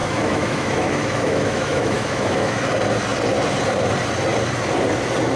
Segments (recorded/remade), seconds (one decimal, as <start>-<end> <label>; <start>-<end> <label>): 0.0-2.6 remade; 2.6-5.4 recorded